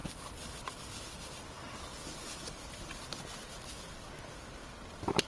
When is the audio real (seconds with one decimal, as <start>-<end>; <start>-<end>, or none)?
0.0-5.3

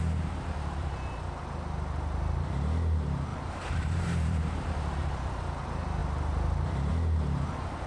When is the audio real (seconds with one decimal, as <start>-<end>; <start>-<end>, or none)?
0.0-3.3; 4.4-7.9

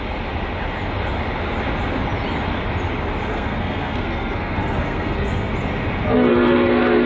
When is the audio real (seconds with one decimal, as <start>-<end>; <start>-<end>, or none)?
0.0-3.3; 5.5-6.3

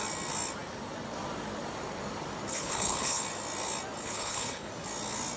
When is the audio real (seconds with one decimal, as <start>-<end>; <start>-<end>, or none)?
0.0-2.5; 3.2-4.0; 4.7-5.4

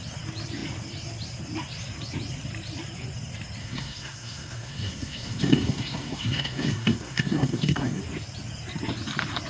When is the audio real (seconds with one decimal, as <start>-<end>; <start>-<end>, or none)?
0.0-3.6; 8.0-9.5